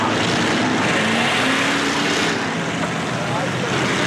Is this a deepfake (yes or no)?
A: no